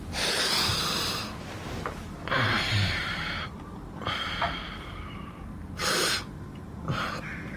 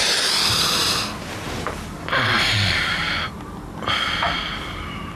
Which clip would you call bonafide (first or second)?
second